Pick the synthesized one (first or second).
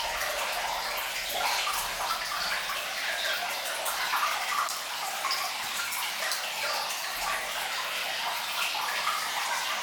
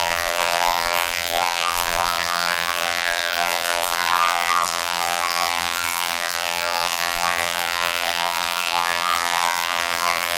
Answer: second